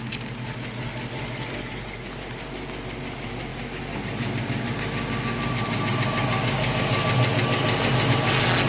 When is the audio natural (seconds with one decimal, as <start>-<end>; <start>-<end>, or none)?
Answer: 0.0-8.7